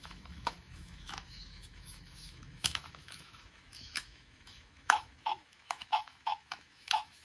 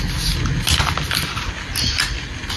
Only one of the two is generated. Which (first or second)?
first